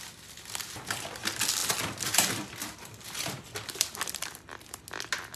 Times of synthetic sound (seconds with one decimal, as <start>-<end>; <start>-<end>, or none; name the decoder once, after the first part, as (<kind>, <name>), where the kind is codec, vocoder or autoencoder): 1.6-4.8 (vocoder, BigVGAN v2)